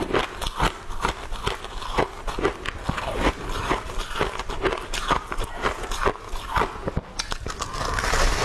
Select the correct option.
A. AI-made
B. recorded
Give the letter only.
B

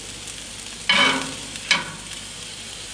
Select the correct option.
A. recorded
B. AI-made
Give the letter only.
A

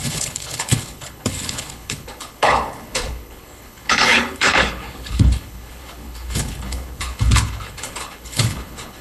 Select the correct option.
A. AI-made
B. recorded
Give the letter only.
A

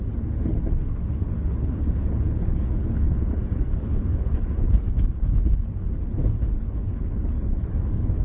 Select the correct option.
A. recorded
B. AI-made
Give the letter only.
B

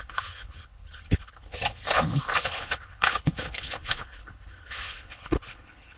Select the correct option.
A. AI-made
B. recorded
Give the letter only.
A